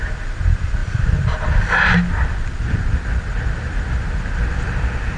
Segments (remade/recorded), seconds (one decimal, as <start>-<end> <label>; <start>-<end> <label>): 0.0-5.2 recorded